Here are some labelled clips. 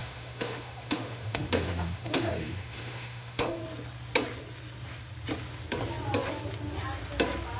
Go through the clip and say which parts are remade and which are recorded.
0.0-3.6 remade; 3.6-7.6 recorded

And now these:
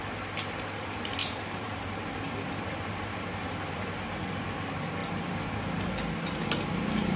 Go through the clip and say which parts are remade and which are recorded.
0.0-1.2 recorded; 1.2-2.2 remade; 2.2-7.2 recorded

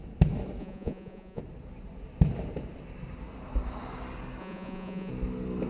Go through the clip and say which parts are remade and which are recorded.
0.0-0.6 recorded; 0.6-1.4 remade; 1.4-4.4 recorded; 4.4-5.1 remade; 5.1-5.7 recorded

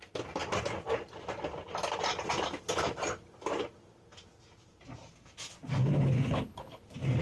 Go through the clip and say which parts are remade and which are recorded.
0.0-5.8 recorded; 5.8-6.8 remade; 6.8-7.2 recorded